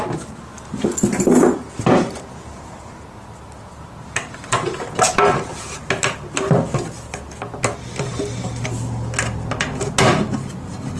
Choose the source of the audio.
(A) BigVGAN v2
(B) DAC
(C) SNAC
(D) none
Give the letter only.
D